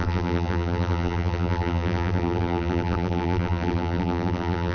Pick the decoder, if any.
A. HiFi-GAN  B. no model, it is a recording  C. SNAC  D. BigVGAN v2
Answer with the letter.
D